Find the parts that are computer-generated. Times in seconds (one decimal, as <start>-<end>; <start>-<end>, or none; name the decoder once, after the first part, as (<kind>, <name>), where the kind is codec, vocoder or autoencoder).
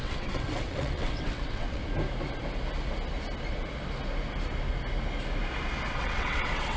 0.0-1.8 (vocoder, WaveNeXt); 5.9-6.8